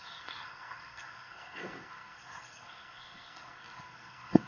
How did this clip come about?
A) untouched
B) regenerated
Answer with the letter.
B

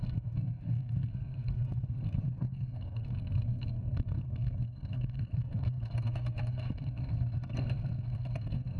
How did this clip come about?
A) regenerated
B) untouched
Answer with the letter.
A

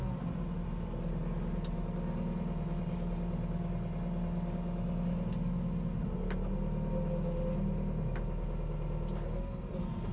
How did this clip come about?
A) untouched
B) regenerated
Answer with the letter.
A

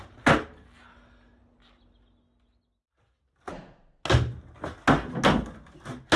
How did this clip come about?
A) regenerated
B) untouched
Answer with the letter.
B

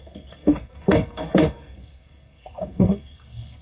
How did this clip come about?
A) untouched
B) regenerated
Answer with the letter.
B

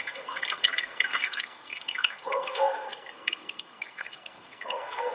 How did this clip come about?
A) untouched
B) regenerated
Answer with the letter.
B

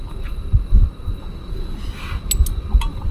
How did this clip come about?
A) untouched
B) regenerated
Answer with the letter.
A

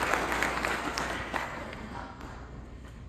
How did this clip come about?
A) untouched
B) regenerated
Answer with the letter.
B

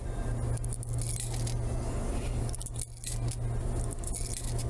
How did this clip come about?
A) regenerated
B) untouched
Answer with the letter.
B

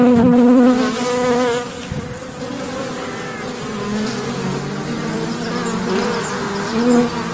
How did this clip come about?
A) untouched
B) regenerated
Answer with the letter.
A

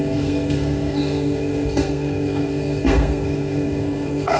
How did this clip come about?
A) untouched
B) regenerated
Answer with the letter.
B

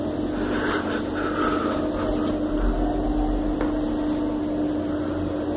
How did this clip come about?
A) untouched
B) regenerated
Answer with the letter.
A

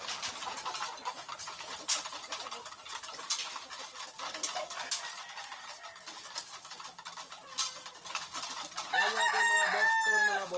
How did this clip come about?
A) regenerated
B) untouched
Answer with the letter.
B